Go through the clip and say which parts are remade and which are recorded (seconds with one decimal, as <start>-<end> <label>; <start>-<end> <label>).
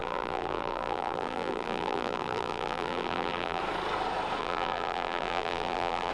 0.0-3.6 remade; 3.6-4.4 recorded; 4.4-6.1 remade